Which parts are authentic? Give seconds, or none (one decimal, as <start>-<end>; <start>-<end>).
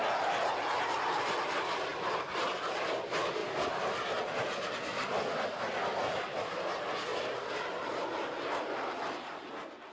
0.0-1.9; 2.9-3.4; 5.1-7.1; 9.5-9.9